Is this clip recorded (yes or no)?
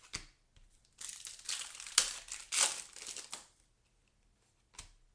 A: yes